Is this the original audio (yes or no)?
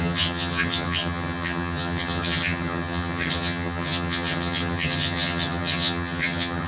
no